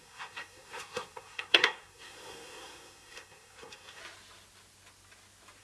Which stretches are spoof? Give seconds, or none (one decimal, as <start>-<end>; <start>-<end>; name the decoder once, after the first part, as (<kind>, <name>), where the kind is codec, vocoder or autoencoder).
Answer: 0.0-4.0 (codec, SNAC)